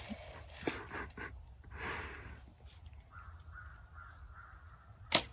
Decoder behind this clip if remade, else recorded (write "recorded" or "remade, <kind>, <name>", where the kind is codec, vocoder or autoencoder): recorded